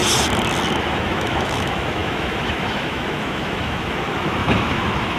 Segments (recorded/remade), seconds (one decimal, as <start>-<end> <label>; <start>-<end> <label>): 0.0-0.8 recorded; 0.8-5.2 remade